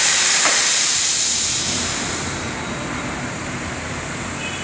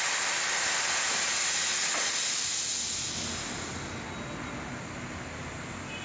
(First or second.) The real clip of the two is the second